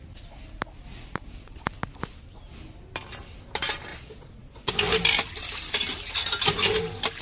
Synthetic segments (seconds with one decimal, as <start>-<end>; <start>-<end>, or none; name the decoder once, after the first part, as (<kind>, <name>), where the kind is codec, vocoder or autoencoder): 0.9-1.7 (vocoder, Vocos); 3.9-4.7